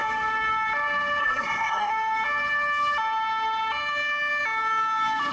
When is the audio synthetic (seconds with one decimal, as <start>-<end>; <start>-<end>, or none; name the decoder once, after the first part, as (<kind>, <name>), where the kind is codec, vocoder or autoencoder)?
1.2-1.9 (codec, SNAC)